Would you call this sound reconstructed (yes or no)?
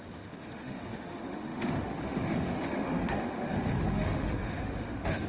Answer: yes